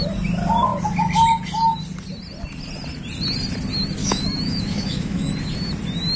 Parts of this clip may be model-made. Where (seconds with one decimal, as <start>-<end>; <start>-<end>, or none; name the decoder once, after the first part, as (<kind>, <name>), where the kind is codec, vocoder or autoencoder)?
4.0-5.3 (autoencoder, DAC-VAE)